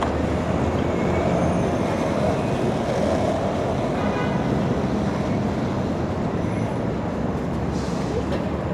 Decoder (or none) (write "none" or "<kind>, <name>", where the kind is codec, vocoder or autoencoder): none